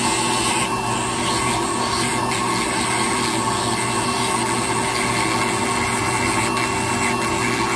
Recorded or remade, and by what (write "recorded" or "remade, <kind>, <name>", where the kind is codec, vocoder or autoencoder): recorded